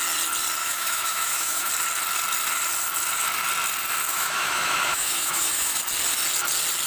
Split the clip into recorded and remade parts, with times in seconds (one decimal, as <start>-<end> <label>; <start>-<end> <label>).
0.0-0.6 recorded; 0.6-1.7 remade; 1.7-4.1 recorded; 4.1-5.8 remade; 5.8-6.9 recorded